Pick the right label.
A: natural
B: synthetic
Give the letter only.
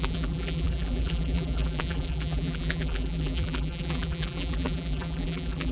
B